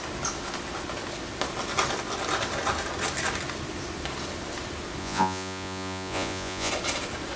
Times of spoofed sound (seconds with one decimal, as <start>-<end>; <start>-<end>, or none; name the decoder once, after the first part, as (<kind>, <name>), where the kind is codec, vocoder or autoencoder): 5.0-6.7 (vocoder, Vocos)